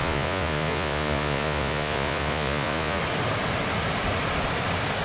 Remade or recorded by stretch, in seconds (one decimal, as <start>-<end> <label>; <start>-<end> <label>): 0.0-3.0 remade; 3.0-5.0 recorded